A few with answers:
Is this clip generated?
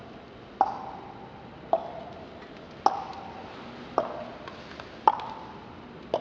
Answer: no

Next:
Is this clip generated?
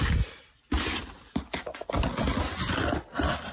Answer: no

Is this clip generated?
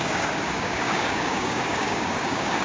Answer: yes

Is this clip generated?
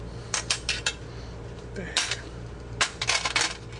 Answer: no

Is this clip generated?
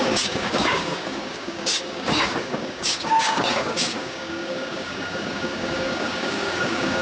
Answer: yes